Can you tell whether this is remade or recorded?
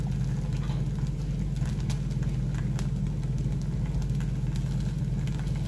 recorded